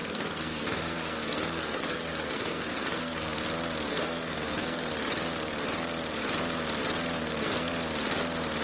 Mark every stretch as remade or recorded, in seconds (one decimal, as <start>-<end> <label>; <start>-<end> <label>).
0.0-3.4 remade; 3.4-3.9 recorded; 3.9-4.9 remade; 4.9-7.2 recorded; 7.2-7.7 remade; 7.7-8.6 recorded